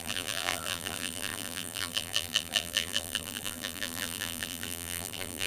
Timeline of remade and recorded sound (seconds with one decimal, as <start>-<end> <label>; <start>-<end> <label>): 0.0-5.5 remade